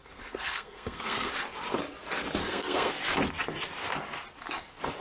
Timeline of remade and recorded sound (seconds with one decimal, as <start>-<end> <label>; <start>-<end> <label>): 0.0-1.3 remade; 1.3-2.4 recorded; 2.4-2.9 remade; 2.9-5.0 recorded